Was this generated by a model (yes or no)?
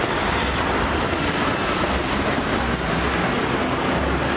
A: no